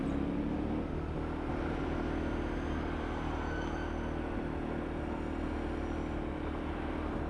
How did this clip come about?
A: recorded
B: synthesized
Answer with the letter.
A